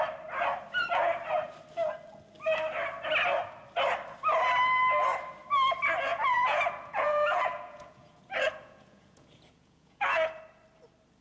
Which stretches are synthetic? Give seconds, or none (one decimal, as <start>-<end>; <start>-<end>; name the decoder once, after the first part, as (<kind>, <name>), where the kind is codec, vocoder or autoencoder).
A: 6.1-10.4 (vocoder, Vocos)